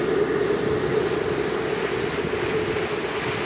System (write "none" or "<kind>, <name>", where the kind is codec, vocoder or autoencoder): none